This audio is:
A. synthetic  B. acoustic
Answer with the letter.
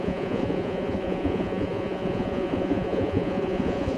A